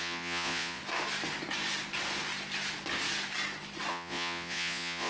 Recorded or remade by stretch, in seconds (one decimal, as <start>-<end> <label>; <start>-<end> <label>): 0.0-0.8 remade; 0.8-3.9 recorded; 3.9-5.1 remade

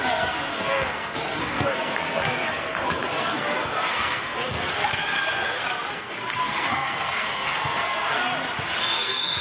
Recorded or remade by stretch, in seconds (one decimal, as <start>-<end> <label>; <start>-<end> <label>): 0.0-8.2 remade; 8.2-8.8 recorded; 8.8-9.4 remade